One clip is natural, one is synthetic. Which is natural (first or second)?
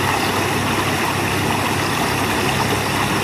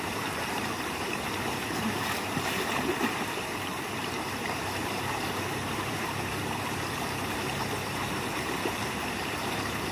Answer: first